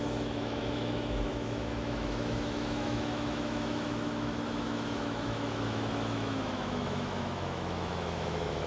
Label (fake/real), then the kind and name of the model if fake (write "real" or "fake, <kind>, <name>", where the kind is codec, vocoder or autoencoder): fake, autoencoder, DAC-VAE